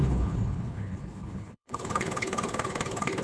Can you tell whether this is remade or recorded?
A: remade